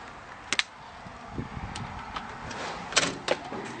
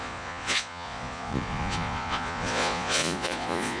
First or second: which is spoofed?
second